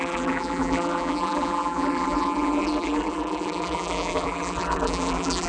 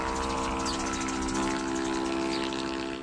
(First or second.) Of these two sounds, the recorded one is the second